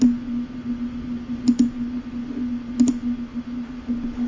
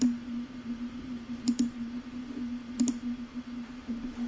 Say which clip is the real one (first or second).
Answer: first